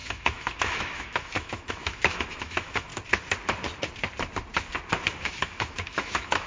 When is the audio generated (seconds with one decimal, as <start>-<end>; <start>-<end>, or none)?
0.0-2.9; 5.0-6.5